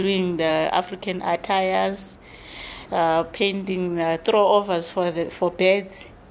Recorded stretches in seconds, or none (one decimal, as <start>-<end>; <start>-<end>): 0.0-6.3